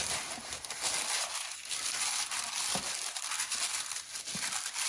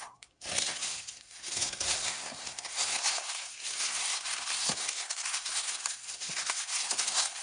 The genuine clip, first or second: first